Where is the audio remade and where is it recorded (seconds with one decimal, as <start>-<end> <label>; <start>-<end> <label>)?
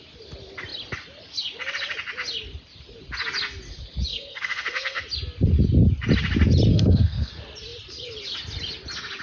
0.0-4.1 recorded; 4.1-5.0 remade; 5.0-6.7 recorded; 6.7-7.3 remade; 7.3-9.2 recorded